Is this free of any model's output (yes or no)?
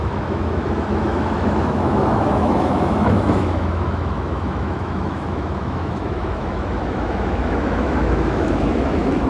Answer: no